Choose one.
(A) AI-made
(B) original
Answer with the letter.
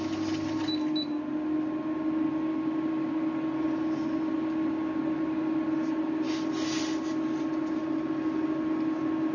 B